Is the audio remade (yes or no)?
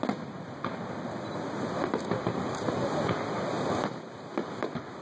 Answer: no